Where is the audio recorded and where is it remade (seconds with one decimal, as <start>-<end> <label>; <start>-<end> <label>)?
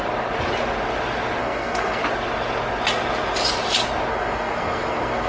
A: 0.0-1.4 recorded; 1.4-2.0 remade; 2.0-4.1 recorded; 4.1-5.3 remade